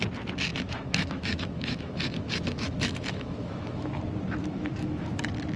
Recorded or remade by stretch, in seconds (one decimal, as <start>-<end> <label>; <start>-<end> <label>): 0.0-0.5 recorded; 0.5-3.9 remade; 3.9-4.4 recorded; 4.4-5.1 remade; 5.1-5.6 recorded